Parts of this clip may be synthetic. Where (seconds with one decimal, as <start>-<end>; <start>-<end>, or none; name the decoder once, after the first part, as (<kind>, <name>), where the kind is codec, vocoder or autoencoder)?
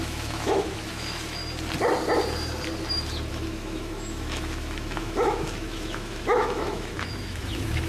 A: 0.0-1.4 (autoencoder, DAC-VAE); 3.3-7.9